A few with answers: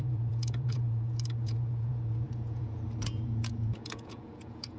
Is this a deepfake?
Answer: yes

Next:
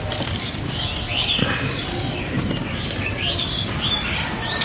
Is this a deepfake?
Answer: no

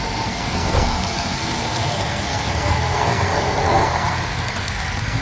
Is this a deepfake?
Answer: yes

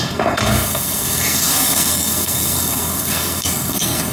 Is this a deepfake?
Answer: yes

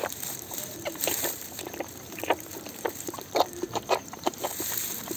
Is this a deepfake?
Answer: yes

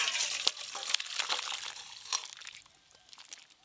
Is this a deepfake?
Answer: no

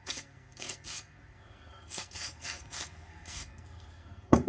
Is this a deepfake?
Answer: yes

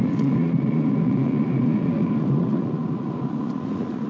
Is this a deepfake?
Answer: yes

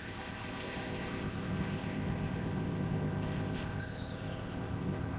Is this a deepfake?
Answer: yes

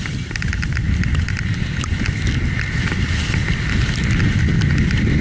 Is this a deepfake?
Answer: no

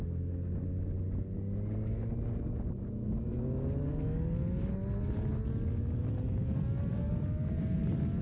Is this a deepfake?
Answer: no